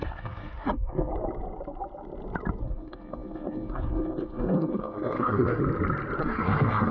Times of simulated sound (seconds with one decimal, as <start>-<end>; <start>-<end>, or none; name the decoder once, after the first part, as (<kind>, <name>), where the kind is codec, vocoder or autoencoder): 0.0-1.1 (codec, SNAC); 2.6-5.6; 6.2-6.9